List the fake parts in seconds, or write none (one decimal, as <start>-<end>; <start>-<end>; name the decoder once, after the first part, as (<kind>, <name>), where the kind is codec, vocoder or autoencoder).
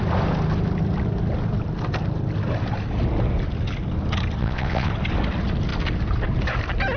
4.4-4.9 (vocoder, WaveNeXt)